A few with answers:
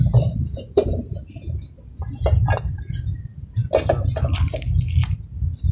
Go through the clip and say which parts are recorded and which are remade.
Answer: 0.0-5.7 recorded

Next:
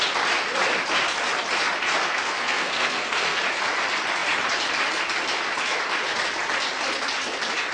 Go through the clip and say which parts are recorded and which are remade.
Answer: 0.0-2.0 recorded; 2.0-3.4 remade; 3.4-7.7 recorded

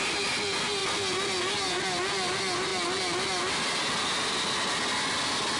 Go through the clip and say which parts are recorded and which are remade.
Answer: 0.0-5.6 recorded

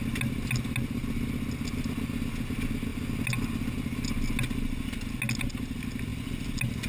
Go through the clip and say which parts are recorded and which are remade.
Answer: 0.0-6.9 recorded

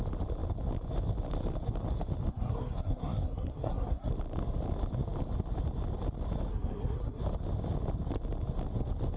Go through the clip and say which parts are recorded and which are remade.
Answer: 0.0-2.3 recorded; 2.3-4.1 remade; 4.1-6.5 recorded; 6.5-7.2 remade; 7.2-9.2 recorded

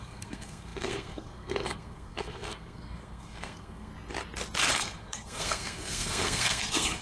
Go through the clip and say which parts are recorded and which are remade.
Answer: 0.0-3.9 remade; 3.9-4.7 recorded; 4.7-7.0 remade

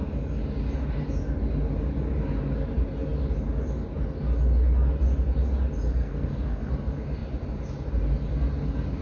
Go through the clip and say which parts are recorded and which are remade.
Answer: 0.0-5.9 recorded; 5.9-6.7 remade; 6.7-9.0 recorded